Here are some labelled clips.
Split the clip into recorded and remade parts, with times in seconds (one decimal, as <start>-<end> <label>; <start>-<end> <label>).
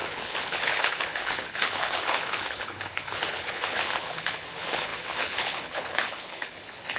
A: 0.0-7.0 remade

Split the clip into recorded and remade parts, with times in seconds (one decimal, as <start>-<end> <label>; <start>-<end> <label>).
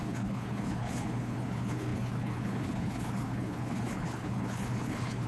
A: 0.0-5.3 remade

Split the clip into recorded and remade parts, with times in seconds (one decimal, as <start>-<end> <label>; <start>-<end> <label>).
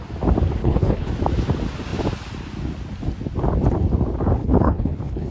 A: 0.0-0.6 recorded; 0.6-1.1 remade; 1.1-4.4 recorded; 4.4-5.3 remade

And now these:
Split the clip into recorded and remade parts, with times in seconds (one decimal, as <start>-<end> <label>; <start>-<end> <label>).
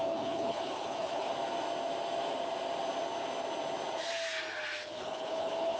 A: 0.0-1.3 remade; 1.3-4.8 recorded; 4.8-5.8 remade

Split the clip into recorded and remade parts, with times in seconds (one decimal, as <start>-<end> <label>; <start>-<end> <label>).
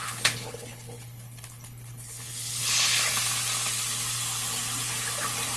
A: 0.0-3.1 remade; 3.1-5.6 recorded